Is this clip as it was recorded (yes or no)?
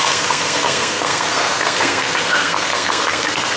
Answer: no